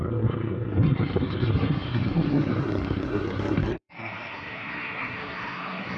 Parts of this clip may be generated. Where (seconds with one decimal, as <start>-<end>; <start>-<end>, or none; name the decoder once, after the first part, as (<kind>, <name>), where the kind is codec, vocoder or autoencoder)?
0.0-6.0 (codec, SNAC)